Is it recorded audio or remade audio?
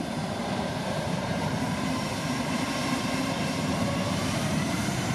remade